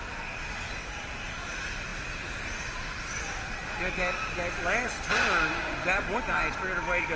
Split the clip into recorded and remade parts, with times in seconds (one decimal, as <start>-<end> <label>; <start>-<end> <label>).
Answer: 0.0-7.2 recorded